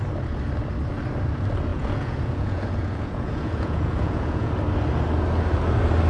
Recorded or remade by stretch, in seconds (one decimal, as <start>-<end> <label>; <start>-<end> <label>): 0.0-1.7 recorded; 1.7-4.5 remade; 4.5-6.1 recorded